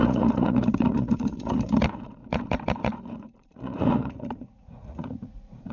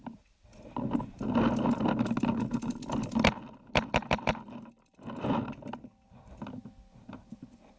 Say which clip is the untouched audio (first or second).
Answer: second